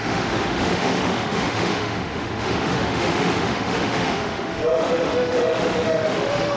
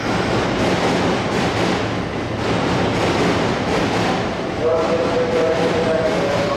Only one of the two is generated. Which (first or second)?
first